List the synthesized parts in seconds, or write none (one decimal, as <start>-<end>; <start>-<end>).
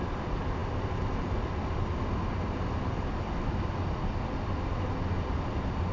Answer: none